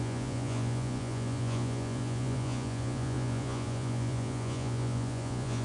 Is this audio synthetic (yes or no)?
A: yes